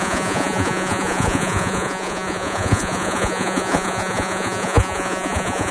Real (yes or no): no